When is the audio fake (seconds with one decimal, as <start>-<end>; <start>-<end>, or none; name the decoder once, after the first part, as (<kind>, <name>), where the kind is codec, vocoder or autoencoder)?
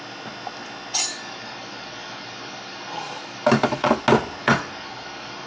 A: 1.1-4.0 (codec, DAC); 4.4-5.5